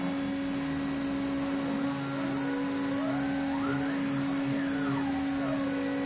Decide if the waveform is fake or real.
real